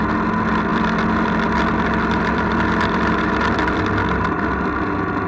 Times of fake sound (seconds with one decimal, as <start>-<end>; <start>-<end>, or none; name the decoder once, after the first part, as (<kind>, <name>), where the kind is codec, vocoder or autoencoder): 0.7-3.8 (vocoder, BigVGAN v2)